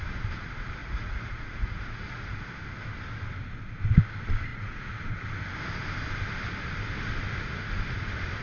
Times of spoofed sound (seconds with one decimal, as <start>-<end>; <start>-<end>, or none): 0.8-2.5; 4.5-5.0